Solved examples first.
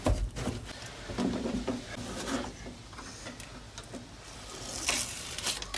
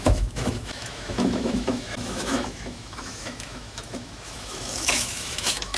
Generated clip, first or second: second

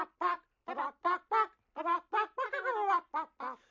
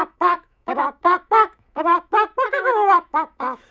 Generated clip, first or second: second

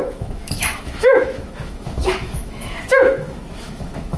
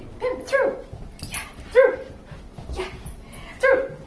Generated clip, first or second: first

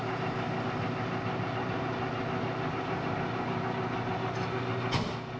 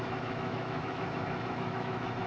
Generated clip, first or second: second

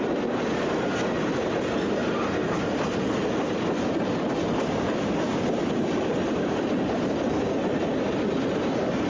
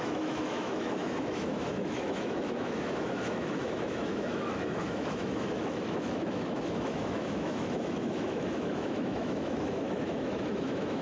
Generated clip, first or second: second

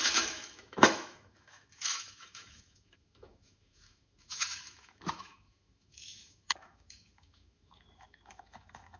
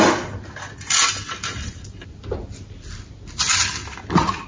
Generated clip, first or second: first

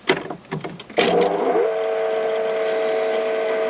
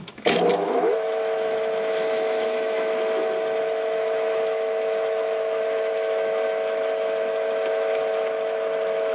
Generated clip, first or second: second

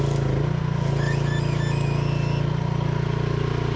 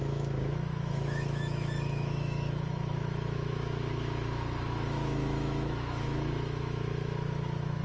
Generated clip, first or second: second